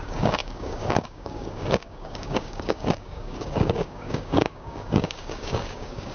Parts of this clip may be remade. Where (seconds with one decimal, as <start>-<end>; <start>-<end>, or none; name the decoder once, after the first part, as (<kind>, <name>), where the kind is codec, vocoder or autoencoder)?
0.0-6.1 (codec, DAC)